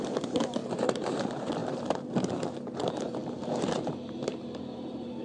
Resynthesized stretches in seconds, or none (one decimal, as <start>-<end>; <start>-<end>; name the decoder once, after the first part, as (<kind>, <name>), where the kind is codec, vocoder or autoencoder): 0.0-5.2 (vocoder, BigVGAN v2)